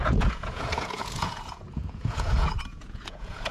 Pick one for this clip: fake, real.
fake